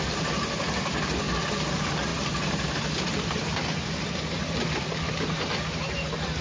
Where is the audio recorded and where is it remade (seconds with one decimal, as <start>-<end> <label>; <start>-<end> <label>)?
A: 0.0-6.4 recorded